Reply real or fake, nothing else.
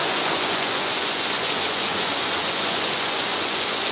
fake